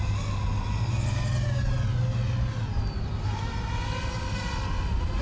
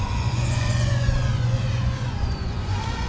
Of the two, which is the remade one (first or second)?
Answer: second